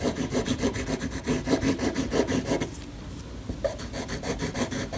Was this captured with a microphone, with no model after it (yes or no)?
yes